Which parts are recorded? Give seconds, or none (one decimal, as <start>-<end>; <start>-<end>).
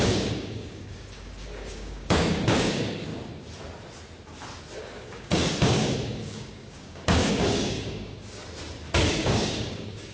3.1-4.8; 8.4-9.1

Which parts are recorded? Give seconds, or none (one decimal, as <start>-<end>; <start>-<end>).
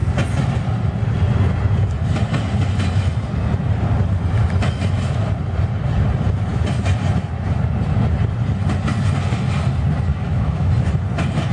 0.0-10.1; 10.7-11.5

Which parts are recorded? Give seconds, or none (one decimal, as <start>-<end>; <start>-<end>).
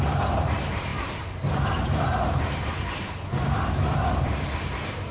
none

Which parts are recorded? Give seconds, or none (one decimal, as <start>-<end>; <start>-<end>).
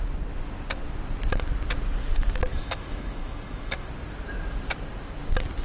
0.0-2.5; 3.9-5.6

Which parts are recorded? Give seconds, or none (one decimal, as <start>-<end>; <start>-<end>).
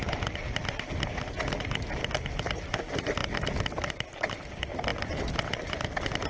0.0-6.3